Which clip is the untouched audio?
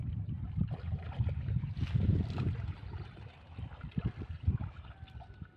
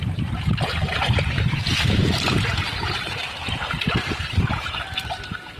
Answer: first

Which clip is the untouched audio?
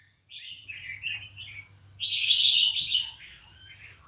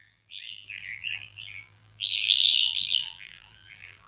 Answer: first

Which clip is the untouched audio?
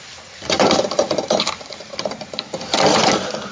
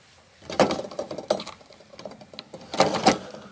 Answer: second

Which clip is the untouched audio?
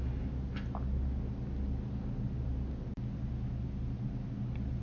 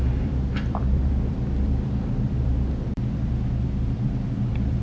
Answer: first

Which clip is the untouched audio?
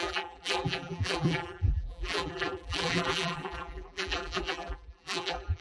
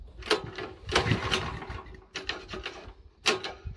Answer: second